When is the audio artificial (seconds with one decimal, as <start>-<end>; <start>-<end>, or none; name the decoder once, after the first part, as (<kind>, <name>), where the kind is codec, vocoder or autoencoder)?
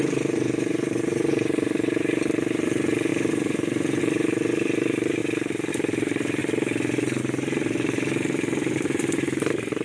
0.0-5.2 (vocoder, BigVGAN v2); 5.7-6.4; 7.2-9.8